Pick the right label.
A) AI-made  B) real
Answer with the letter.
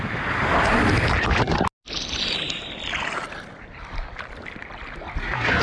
B